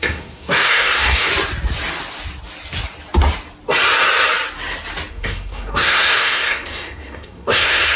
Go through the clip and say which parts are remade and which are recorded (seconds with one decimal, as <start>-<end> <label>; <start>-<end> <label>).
0.0-1.3 remade; 1.3-5.1 recorded; 5.1-8.0 remade